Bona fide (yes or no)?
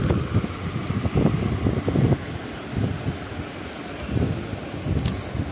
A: yes